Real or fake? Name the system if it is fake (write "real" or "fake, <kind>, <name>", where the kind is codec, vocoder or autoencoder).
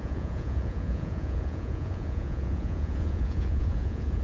fake, vocoder, Vocos